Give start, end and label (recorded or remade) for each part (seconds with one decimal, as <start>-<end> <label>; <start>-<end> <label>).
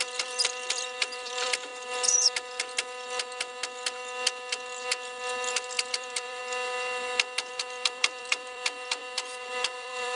0.0-1.7 remade; 1.7-5.7 recorded; 5.7-6.4 remade; 6.4-7.5 recorded; 7.5-10.2 remade